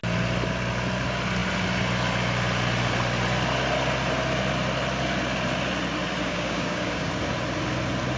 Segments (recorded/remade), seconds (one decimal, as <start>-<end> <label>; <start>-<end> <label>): 0.0-6.2 recorded; 6.2-7.1 remade; 7.1-8.2 recorded